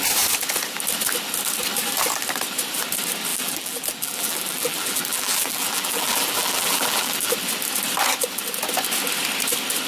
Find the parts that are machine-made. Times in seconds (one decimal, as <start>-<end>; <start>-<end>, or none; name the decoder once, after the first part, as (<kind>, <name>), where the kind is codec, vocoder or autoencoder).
3.3-7.3 (vocoder, BigVGAN v2)